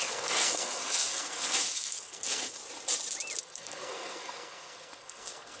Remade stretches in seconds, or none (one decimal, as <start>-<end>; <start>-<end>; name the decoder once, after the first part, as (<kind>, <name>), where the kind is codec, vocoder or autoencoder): 0.0-2.6 (codec, SNAC); 3.4-5.6